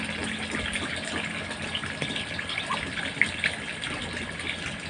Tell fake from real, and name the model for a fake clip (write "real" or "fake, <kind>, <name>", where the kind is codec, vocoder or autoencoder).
real